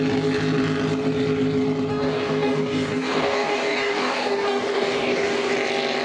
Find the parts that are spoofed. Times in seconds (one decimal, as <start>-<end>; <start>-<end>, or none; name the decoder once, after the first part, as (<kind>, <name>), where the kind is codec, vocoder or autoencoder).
1.9-5.5 (codec, DAC)